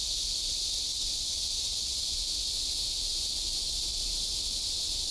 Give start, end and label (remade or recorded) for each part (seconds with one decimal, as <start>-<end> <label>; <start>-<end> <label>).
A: 0.0-0.9 recorded; 0.9-2.2 remade; 2.2-3.1 recorded; 3.1-3.8 remade; 3.8-5.1 recorded